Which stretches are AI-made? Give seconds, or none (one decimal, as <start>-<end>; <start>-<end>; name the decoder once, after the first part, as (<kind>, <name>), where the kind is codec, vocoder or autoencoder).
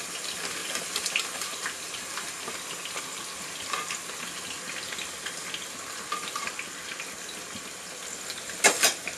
0.6-2.5 (vocoder, BigVGAN v2)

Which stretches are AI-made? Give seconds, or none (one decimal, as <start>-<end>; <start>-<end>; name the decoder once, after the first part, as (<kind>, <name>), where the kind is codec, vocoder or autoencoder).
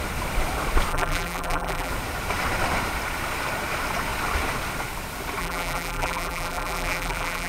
0.9-1.9 (vocoder, BigVGAN v2); 5.4-7.5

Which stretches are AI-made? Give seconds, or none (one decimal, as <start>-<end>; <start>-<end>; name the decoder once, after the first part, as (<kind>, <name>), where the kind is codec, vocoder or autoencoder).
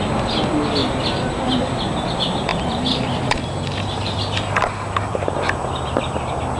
0.8-1.3 (vocoder, BigVGAN v2); 2.5-5.2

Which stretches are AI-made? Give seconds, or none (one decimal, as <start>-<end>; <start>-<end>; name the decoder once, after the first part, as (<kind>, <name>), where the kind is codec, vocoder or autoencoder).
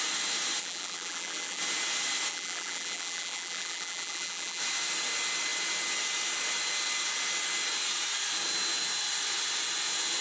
0.6-1.6 (vocoder, BigVGAN v2); 2.3-4.6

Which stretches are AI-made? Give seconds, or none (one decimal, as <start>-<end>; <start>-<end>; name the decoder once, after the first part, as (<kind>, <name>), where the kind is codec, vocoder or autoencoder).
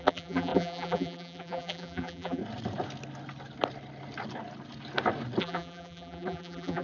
0.0-2.4 (vocoder, BigVGAN v2); 5.4-6.8